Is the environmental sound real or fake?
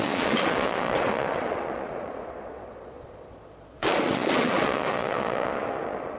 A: fake